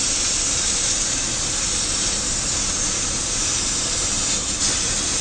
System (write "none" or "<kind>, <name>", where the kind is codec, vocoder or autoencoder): none